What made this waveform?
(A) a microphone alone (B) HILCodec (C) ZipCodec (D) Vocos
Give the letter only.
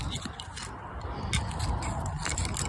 A